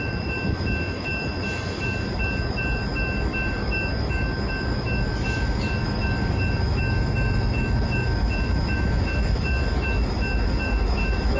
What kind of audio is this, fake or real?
fake